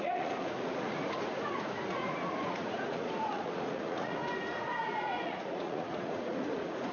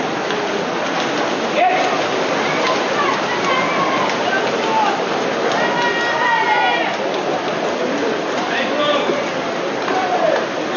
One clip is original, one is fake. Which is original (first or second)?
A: second